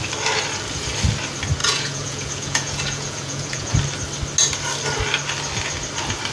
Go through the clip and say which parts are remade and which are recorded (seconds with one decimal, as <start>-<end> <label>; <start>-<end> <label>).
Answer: 0.0-1.6 recorded; 1.6-3.7 remade; 3.7-6.3 recorded